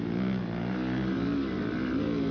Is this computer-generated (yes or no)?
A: no